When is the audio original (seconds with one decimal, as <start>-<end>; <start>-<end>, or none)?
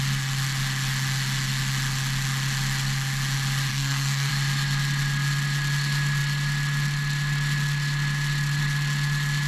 0.0-3.7; 4.3-9.5